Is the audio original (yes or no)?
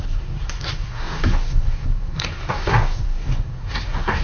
no